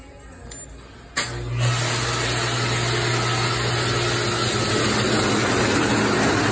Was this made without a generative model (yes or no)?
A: yes